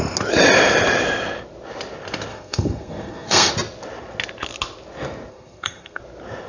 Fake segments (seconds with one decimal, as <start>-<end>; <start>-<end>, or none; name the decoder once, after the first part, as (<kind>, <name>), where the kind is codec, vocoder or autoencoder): 2.3-3.5 (codec, SNAC); 5.3-6.0